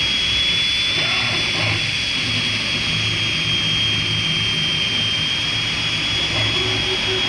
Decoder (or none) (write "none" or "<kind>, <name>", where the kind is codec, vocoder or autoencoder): none